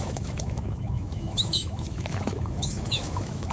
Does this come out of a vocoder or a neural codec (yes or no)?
yes